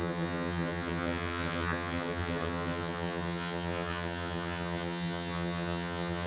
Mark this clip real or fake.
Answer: fake